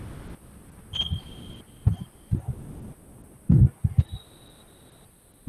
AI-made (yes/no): no